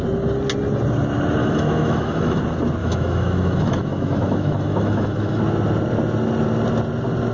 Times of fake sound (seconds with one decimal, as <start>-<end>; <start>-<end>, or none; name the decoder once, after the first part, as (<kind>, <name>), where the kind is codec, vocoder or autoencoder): 1.4-2.4 (autoencoder, DAC-VAE); 2.8-5.4